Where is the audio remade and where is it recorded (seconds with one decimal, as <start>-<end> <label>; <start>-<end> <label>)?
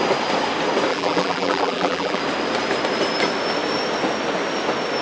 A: 0.0-0.9 recorded; 0.9-2.2 remade; 2.2-5.0 recorded